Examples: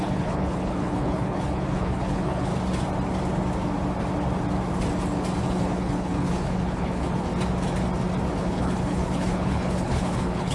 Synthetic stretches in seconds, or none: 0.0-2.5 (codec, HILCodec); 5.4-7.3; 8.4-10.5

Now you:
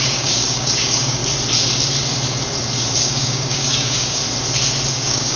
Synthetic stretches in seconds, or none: 0.0-1.2 (codec, DAC); 3.0-4.2; 4.9-5.4

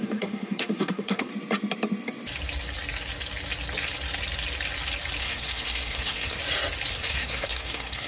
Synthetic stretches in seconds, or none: 0.0-1.3 (codec, SNAC); 5.2-6.4; 6.9-8.1

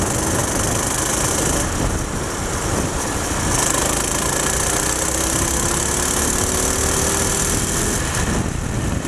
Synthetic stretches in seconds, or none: none

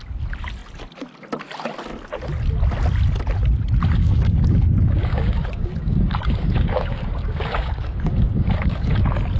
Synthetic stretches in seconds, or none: 4.0-8.9 (codec, DAC)

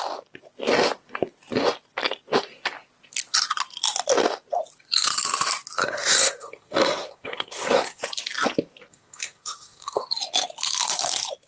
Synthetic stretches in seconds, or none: 5.8-8.0 (codec, SNAC); 8.9-10.0